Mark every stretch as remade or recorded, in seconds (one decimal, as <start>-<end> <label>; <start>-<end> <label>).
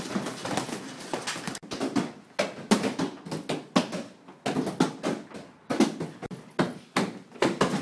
0.0-7.8 recorded